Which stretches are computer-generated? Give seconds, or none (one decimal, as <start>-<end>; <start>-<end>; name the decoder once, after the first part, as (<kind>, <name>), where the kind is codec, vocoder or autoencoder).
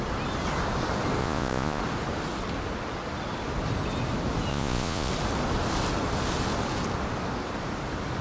1.2-1.8 (vocoder, Vocos); 4.5-5.1